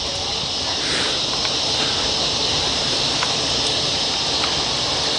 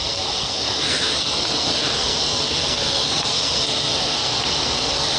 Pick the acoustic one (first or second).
first